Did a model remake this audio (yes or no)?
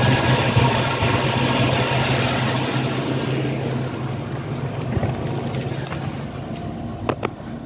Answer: no